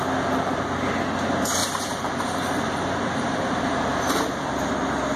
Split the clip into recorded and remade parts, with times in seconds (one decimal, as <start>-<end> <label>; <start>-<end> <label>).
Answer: 0.0-1.6 recorded; 1.6-4.7 remade; 4.7-5.2 recorded

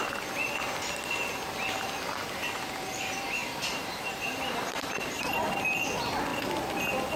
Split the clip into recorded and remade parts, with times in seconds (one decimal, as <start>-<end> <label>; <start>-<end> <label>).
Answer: 0.0-3.4 recorded; 3.4-5.5 remade; 5.5-7.2 recorded

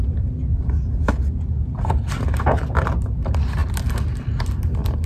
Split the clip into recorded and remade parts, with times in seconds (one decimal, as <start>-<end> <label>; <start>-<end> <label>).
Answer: 0.0-0.5 recorded; 0.5-1.1 remade; 1.1-5.1 recorded

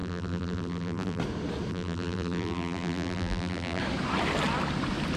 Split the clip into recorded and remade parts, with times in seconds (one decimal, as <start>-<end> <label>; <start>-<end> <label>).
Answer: 0.0-1.2 remade; 1.2-1.7 recorded; 1.7-3.8 remade; 3.8-5.2 recorded

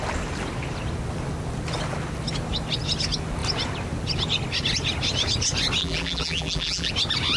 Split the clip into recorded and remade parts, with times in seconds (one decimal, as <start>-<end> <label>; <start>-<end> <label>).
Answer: 0.0-5.8 recorded; 5.8-6.9 remade; 6.9-7.4 recorded